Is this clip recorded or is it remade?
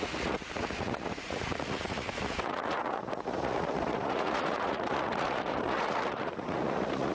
remade